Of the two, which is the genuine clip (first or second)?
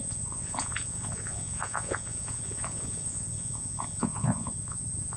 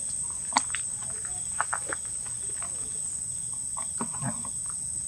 second